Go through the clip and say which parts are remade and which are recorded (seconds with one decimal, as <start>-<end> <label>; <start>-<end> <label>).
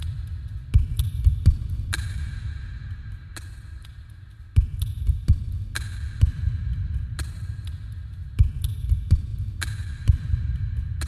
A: 0.0-11.1 recorded